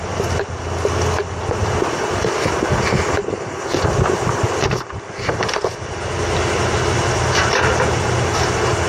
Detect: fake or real real